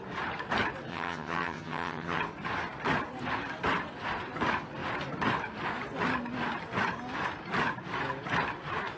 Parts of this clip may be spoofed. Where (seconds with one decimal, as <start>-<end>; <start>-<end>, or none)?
0.9-2.2